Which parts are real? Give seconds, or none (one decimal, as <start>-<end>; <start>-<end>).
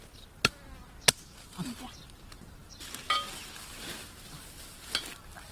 0.0-5.5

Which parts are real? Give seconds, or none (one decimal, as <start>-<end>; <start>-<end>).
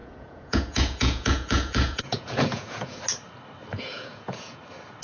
3.0-3.7; 4.6-5.0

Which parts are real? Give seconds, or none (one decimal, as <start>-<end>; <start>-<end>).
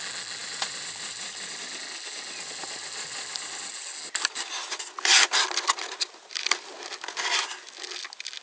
0.0-0.4; 3.7-8.4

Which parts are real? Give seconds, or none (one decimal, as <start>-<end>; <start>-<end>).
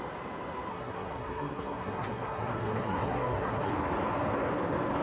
0.0-0.7; 3.7-5.0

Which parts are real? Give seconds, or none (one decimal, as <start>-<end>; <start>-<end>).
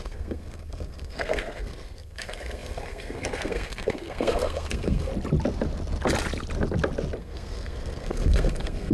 5.1-7.2